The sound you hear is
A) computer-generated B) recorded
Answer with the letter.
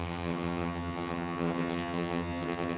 A